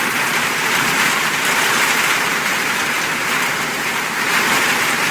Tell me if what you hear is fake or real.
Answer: fake